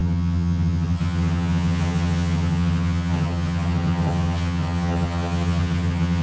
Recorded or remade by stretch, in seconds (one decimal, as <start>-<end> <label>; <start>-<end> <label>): 0.0-6.2 remade